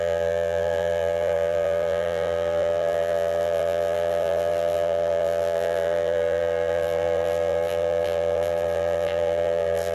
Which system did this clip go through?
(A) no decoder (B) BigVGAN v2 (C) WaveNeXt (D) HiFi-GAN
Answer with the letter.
B